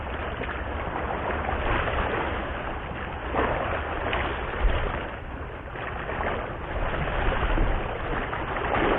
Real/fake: real